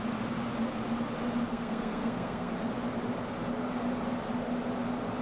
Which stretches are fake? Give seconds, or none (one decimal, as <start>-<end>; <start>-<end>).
1.5-2.5

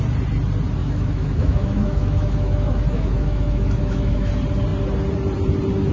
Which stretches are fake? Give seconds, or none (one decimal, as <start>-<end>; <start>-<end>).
0.8-4.3

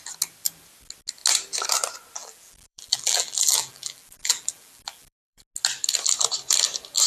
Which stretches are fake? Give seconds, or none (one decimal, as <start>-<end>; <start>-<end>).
2.2-5.4

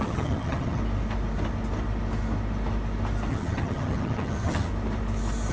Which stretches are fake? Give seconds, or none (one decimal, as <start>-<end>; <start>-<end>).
0.0-0.8; 3.3-4.7

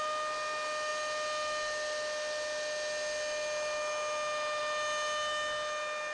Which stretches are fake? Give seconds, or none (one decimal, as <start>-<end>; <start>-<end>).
none